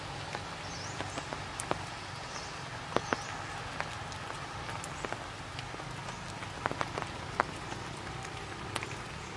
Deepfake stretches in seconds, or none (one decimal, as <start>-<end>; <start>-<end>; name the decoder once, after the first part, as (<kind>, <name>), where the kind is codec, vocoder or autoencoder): none